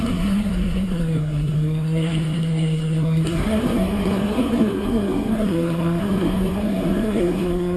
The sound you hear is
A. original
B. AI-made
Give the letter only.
B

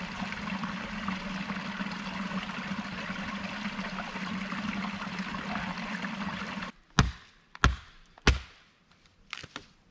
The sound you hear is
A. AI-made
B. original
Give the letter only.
B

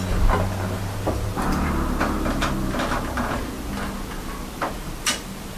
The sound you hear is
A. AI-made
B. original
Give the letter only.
B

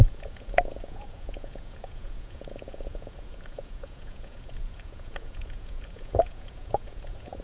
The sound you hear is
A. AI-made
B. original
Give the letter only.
A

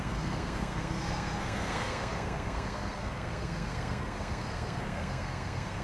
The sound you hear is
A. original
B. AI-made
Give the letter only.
B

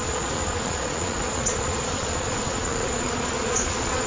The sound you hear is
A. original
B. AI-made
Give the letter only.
B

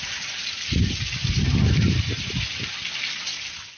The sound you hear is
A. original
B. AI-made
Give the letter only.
A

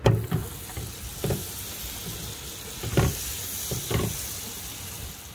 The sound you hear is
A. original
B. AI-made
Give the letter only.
A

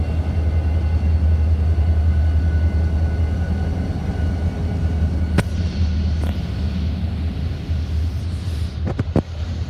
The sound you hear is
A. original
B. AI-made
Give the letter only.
A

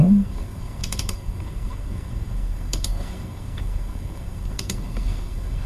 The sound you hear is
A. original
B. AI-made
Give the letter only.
B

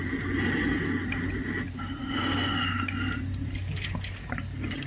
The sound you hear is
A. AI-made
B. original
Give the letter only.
B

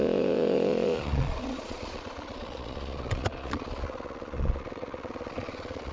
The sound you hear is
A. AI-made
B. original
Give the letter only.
A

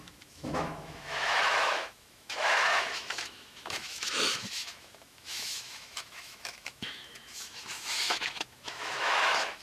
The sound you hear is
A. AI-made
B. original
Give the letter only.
A